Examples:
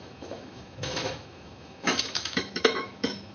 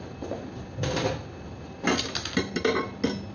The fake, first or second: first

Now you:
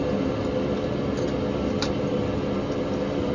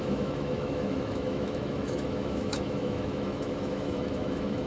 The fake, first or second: second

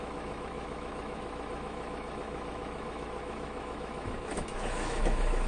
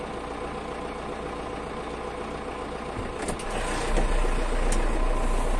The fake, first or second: first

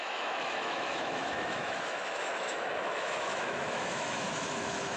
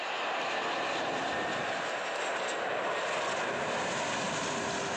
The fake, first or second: first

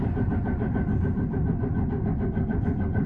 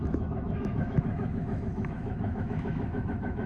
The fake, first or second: second